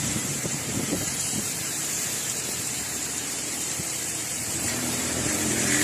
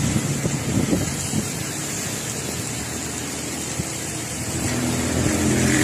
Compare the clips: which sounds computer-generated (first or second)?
first